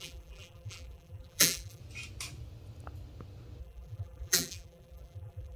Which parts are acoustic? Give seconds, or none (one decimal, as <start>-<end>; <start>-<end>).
1.8-3.6